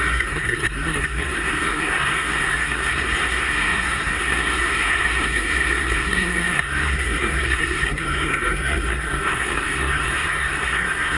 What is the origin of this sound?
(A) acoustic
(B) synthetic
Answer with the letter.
B